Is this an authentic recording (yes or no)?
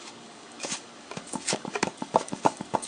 no